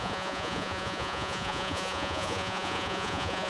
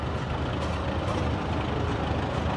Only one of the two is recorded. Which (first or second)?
second